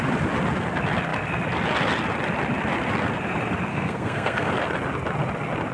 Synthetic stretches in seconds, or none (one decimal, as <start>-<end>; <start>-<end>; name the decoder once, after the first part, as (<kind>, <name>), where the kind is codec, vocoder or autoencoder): 3.7-4.5 (codec, SNAC)